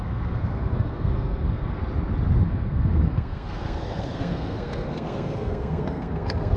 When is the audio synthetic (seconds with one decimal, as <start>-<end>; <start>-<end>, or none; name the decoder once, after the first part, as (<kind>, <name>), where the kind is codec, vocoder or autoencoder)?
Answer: 0.0-1.8 (codec, SNAC); 2.4-6.6